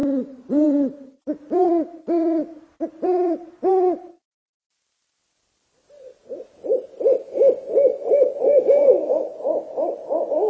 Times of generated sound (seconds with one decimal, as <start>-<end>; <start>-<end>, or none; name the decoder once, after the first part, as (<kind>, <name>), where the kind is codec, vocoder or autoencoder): 0.0-6.2 (vocoder, BigVGAN v2)